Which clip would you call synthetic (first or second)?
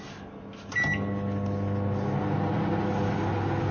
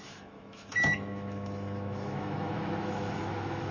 second